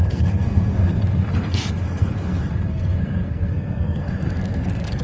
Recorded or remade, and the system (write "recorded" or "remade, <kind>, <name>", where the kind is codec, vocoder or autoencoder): remade, codec, SNAC